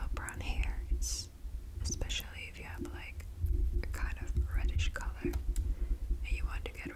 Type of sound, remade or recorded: recorded